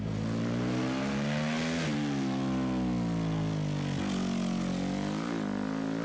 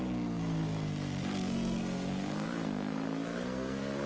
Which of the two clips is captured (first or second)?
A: first